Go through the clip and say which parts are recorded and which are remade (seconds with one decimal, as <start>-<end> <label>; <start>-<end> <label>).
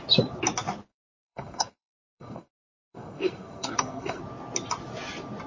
0.0-0.9 recorded; 0.9-4.2 remade; 4.2-5.5 recorded